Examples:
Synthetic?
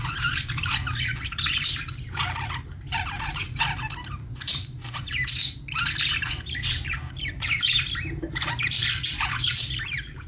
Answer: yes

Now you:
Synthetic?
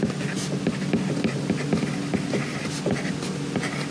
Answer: no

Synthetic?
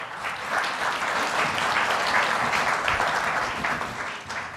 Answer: no